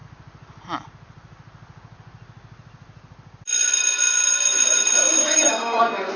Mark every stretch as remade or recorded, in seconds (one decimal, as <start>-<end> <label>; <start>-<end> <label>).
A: 0.0-5.2 recorded; 5.2-5.8 remade; 5.8-6.2 recorded

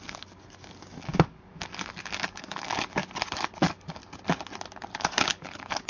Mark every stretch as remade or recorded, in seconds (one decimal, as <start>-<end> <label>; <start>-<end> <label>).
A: 0.0-3.0 remade; 3.0-3.6 recorded; 3.6-4.0 remade; 4.0-5.0 recorded; 5.0-5.9 remade

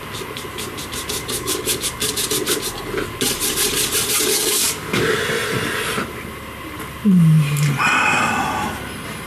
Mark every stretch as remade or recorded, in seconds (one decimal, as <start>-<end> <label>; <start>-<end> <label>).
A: 0.0-1.2 recorded; 1.2-2.2 remade; 2.2-4.3 recorded; 4.3-5.2 remade; 5.2-9.3 recorded